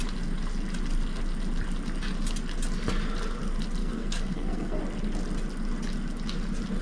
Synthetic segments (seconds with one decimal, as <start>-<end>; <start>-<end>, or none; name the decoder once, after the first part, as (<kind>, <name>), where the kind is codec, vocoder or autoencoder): 3.8-4.8 (codec, SNAC)

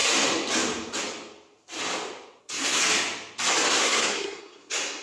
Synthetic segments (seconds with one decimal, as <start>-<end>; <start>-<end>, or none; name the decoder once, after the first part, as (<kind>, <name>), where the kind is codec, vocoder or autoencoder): 2.4-2.8 (codec, SNAC); 3.7-5.0